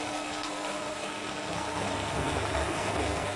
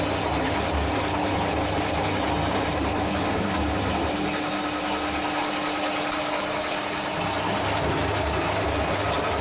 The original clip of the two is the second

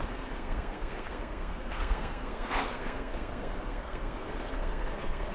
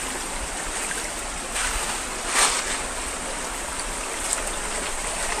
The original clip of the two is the second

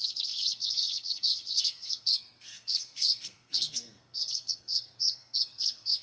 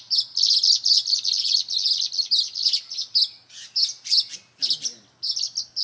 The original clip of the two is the second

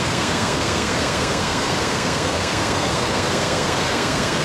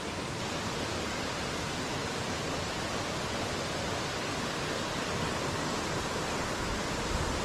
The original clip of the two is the second